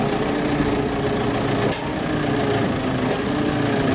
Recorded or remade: recorded